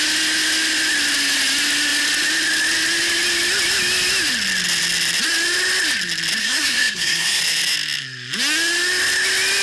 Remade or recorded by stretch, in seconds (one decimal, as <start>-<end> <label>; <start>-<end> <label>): 0.0-6.4 recorded; 6.4-7.4 remade; 7.4-9.6 recorded